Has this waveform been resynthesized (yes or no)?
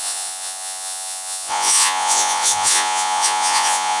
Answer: yes